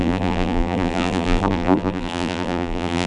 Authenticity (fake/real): fake